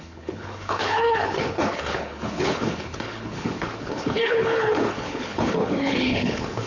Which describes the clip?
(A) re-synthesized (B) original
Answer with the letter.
A